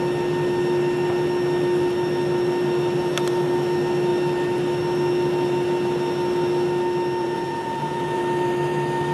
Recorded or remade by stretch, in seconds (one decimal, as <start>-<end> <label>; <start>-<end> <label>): 0.0-7.2 recorded; 7.2-8.2 remade; 8.2-9.1 recorded